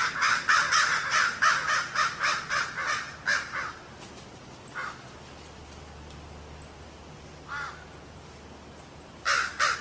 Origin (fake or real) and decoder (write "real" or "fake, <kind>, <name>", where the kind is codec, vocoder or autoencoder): real